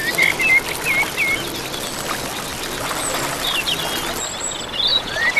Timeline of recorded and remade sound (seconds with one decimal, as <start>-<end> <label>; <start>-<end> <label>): 0.0-4.9 recorded; 4.9-5.4 remade